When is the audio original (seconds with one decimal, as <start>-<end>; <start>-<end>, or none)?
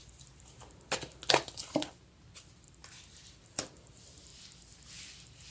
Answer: 0.0-1.5; 2.8-3.3; 4.3-5.1